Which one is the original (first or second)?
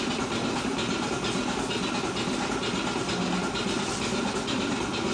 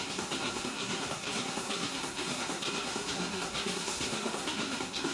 first